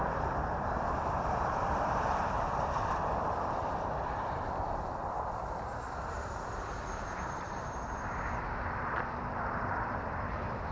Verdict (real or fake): fake